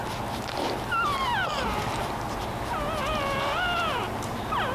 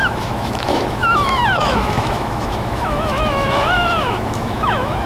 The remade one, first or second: second